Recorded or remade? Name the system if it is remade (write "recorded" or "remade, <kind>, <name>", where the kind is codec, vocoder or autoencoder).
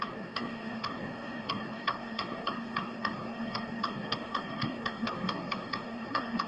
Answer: remade, codec, SNAC